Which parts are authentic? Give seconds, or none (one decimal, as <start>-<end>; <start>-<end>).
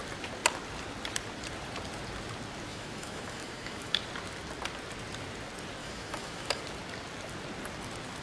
0.0-2.7; 4.0-5.8; 6.6-8.2